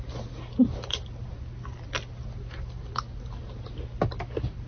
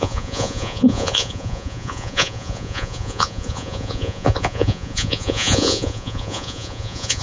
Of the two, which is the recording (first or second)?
first